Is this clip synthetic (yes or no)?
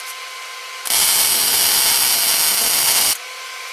no